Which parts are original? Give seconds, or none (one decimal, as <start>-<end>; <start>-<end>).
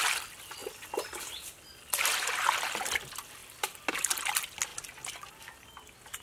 0.0-6.2